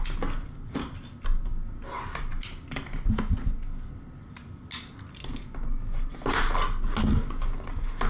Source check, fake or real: real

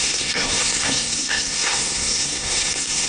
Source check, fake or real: fake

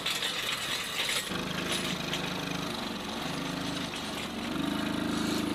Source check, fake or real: real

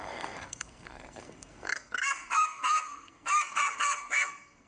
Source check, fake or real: fake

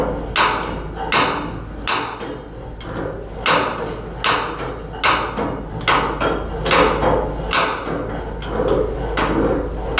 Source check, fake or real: real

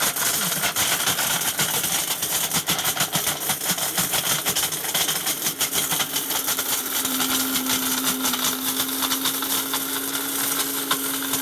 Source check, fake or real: real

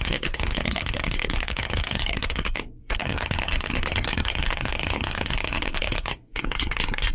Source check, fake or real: fake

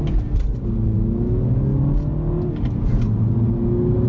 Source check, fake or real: real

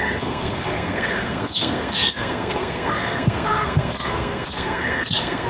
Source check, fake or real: fake